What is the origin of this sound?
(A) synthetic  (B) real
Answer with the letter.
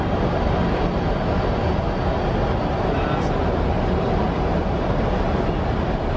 B